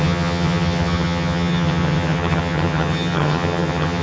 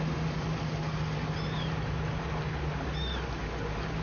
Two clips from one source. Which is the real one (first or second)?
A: second